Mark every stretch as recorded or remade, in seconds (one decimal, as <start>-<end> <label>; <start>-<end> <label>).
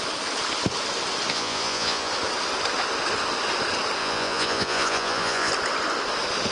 0.0-1.3 recorded; 1.3-2.1 remade; 2.1-4.0 recorded; 4.0-5.5 remade; 5.5-6.5 recorded